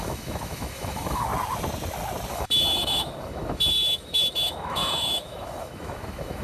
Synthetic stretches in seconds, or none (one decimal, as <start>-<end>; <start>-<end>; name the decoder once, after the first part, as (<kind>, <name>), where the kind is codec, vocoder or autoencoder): 0.0-1.3 (autoencoder, DAC-VAE); 2.3-6.4